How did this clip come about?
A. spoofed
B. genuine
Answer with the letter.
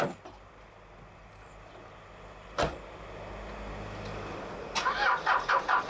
B